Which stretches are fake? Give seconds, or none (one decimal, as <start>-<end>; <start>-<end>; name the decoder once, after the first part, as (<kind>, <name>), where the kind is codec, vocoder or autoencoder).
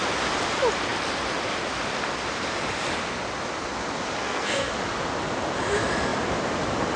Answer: 4.2-4.7 (codec, SNAC)